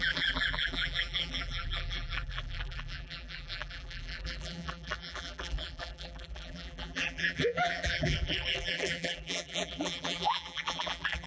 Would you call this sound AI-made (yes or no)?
yes